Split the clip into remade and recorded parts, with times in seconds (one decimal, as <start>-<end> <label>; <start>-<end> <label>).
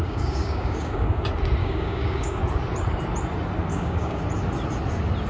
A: 0.0-1.2 remade; 1.2-1.6 recorded; 1.6-2.4 remade; 2.4-3.7 recorded; 3.7-4.2 remade; 4.2-5.3 recorded